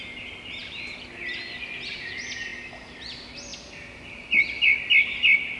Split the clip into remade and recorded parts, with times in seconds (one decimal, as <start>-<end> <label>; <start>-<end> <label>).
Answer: 0.0-0.6 recorded; 0.6-1.6 remade; 1.6-3.5 recorded; 3.5-4.8 remade; 4.8-5.6 recorded